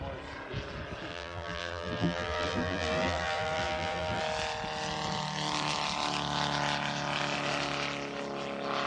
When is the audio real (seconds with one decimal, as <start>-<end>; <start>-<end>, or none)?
0.0-1.1; 4.2-8.9